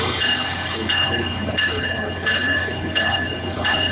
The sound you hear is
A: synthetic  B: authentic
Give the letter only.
A